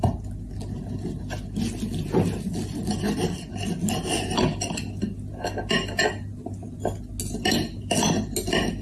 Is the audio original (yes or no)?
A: yes